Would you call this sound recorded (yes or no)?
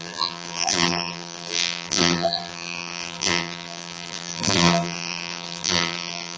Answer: no